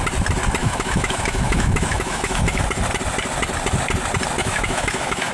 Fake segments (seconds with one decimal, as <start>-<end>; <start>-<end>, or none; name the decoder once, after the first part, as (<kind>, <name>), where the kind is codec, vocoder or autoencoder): 0.6-2.6 (autoencoder, DAC-VAE); 4.4-5.3